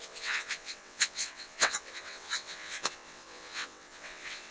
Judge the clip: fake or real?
fake